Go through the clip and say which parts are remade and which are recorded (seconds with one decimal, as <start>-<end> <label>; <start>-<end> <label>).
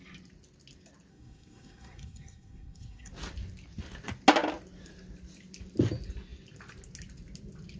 0.0-1.1 recorded; 1.1-3.1 remade; 3.1-7.8 recorded